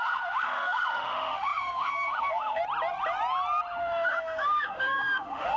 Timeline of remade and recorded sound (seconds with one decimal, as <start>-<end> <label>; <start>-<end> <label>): 0.0-2.6 remade; 2.6-3.8 recorded; 3.8-5.6 remade